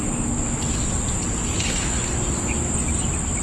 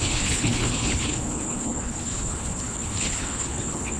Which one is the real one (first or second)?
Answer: first